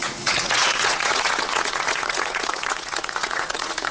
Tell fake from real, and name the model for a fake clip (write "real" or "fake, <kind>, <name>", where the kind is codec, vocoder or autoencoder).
fake, vocoder, Vocos